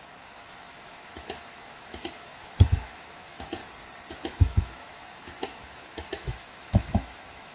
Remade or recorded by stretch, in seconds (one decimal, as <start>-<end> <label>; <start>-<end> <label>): 0.0-3.6 remade; 3.6-4.1 recorded; 4.1-7.5 remade